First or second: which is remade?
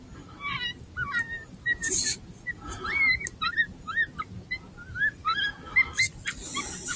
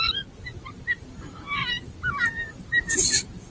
second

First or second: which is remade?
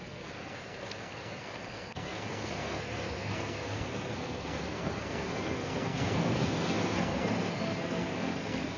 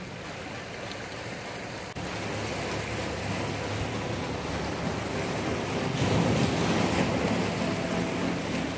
first